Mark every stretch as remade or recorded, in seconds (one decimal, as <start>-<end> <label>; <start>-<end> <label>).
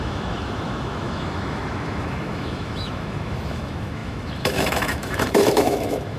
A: 0.0-6.2 remade